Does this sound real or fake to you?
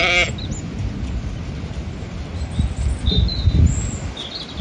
real